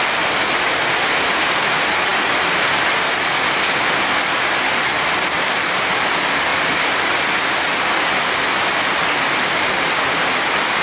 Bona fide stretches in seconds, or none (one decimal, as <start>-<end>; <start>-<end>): 0.0-10.8